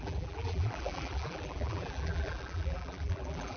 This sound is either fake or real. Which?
fake